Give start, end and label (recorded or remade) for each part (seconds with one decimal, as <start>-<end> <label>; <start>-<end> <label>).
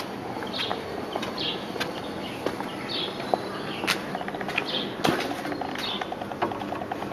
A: 0.0-2.7 recorded; 2.7-3.5 remade; 3.5-7.1 recorded